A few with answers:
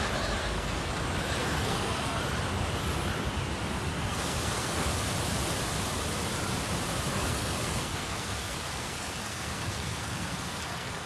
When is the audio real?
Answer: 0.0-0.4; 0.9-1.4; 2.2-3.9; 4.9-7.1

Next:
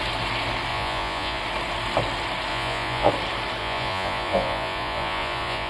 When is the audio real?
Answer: 0.0-0.7; 1.4-2.5; 3.1-3.6